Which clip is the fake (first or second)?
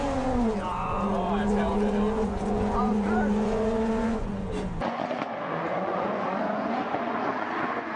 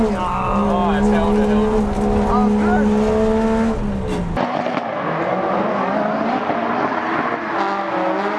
first